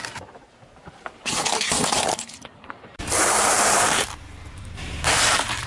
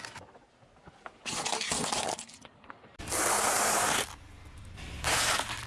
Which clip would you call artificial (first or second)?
first